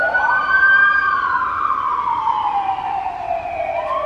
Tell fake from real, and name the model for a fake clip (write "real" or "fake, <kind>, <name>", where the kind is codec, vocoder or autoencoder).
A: fake, vocoder, BigVGAN v2